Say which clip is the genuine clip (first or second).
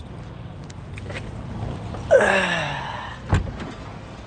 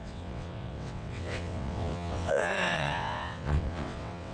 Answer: first